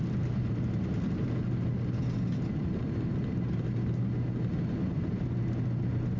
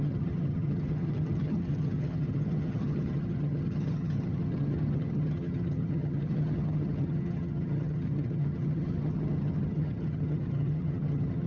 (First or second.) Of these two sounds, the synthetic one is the second